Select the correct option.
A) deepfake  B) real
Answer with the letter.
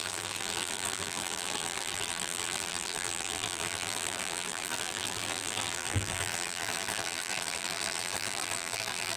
A